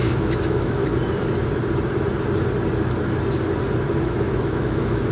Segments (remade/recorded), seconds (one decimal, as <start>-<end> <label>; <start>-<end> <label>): 0.0-0.9 remade; 0.9-4.0 recorded; 4.0-5.1 remade